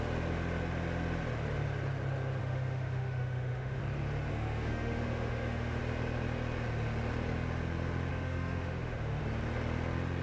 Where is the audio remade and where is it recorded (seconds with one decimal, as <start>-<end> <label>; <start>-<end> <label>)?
0.0-2.4 recorded; 2.4-3.8 remade; 3.8-4.3 recorded; 4.3-5.8 remade; 5.8-8.1 recorded; 8.1-9.2 remade; 9.2-10.2 recorded